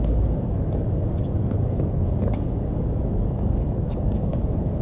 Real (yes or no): no